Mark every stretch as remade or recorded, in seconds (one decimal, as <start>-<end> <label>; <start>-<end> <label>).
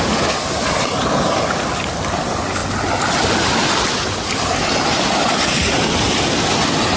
0.0-7.0 recorded